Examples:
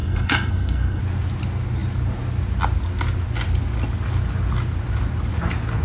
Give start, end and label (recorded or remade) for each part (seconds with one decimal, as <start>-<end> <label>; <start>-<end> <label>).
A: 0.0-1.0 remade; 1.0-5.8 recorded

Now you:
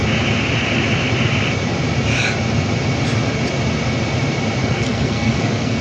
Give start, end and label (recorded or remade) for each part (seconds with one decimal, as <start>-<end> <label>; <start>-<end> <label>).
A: 0.0-4.6 recorded; 4.6-5.8 remade

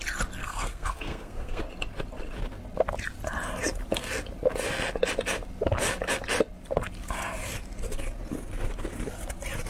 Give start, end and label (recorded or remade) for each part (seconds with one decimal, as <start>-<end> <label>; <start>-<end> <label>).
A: 0.0-0.4 recorded; 0.4-1.6 remade; 1.6-9.7 recorded